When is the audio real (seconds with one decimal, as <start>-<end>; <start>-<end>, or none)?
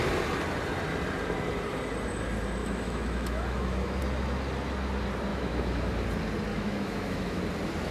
0.0-2.6; 4.0-5.3; 5.9-6.5; 7.4-7.9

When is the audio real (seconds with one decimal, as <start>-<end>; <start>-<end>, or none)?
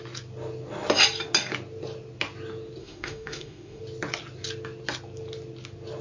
0.0-2.8; 3.8-6.0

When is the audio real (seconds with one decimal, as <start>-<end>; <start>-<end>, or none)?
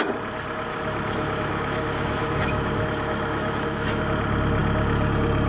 0.0-0.7; 4.0-5.5